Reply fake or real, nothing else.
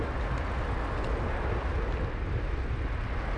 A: real